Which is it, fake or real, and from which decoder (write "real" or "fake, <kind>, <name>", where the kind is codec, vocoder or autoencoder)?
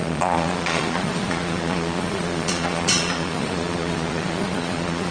fake, vocoder, Vocos